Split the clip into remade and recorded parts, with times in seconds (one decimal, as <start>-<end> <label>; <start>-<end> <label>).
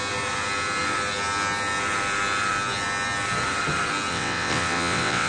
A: 0.0-4.1 recorded; 4.1-5.3 remade